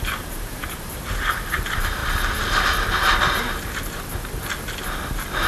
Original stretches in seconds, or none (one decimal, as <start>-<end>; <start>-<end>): 2.0-5.5